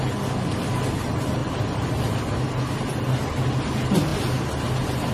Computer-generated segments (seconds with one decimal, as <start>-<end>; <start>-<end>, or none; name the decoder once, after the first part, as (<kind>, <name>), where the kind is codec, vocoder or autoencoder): none